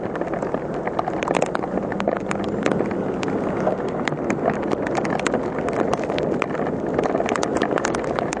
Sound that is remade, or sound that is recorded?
recorded